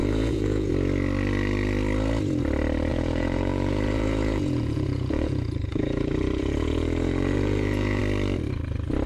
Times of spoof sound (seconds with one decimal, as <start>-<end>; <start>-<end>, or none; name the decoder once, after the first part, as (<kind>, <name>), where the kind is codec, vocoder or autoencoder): 0.0-0.7 (vocoder, Vocos); 2.9-8.0